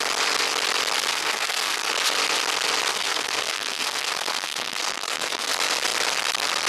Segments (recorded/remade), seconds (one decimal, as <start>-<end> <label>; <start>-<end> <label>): 0.0-1.1 recorded; 1.1-1.9 remade; 1.9-2.9 recorded; 2.9-5.5 remade; 5.5-6.7 recorded